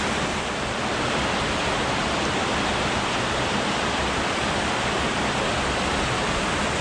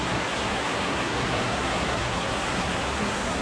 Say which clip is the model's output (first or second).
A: second